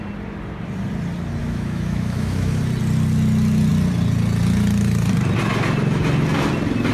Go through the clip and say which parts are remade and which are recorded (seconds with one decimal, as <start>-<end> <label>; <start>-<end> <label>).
0.0-1.4 recorded; 1.4-2.6 remade; 2.6-6.9 recorded

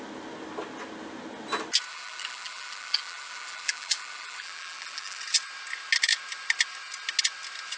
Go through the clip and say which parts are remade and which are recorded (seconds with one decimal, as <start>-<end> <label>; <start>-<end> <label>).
0.0-1.9 recorded; 1.9-5.2 remade; 5.2-7.8 recorded

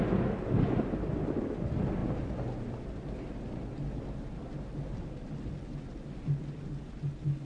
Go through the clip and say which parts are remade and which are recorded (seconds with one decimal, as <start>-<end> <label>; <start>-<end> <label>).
0.0-7.4 recorded

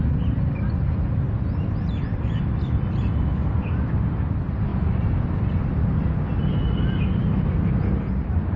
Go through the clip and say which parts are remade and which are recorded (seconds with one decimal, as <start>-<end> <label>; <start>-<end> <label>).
0.0-3.4 recorded; 3.4-3.9 remade; 3.9-8.6 recorded

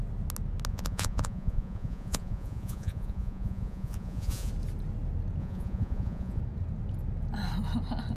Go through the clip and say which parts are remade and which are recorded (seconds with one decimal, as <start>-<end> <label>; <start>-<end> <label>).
0.0-0.7 recorded; 0.7-4.5 remade; 4.5-5.4 recorded; 5.4-6.4 remade; 6.4-8.2 recorded

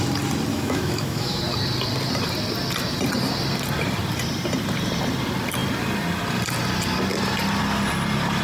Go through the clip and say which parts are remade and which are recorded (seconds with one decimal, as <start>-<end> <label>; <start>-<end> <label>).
0.0-0.5 recorded; 0.5-1.4 remade; 1.4-8.4 recorded

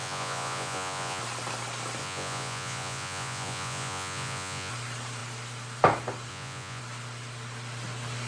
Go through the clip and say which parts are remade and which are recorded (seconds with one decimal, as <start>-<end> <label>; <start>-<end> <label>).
0.0-1.2 remade; 1.2-2.0 recorded; 2.0-4.7 remade; 4.7-6.3 recorded; 6.3-6.8 remade; 6.8-8.3 recorded

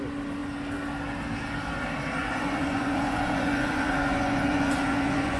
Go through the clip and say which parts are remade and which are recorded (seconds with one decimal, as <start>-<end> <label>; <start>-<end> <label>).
0.0-2.2 recorded; 2.2-5.4 remade